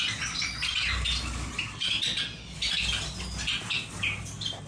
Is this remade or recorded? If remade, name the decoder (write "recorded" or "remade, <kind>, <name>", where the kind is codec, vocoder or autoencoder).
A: recorded